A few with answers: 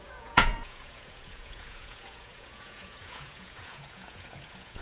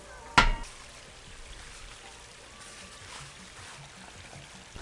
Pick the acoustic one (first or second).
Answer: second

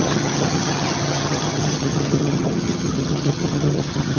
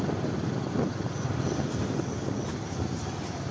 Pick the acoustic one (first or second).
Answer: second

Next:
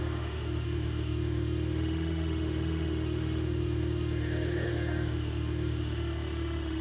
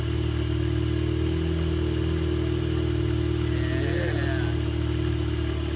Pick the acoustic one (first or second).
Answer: second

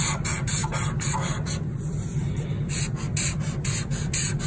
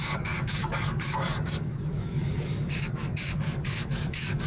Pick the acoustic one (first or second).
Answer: first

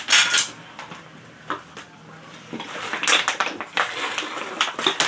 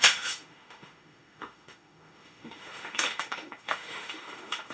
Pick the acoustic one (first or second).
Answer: first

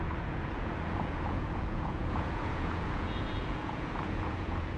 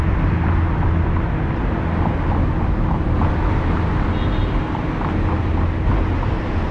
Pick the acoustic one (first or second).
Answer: second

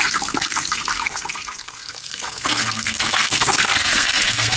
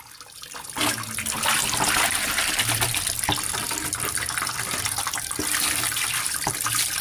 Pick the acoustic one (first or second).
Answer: second